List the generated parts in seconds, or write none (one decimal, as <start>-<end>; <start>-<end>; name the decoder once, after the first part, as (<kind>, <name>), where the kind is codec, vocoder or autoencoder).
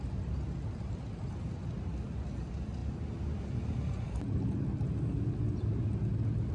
2.8-4.2 (vocoder, BigVGAN v2)